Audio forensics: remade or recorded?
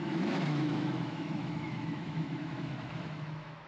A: remade